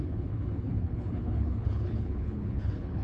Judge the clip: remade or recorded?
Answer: remade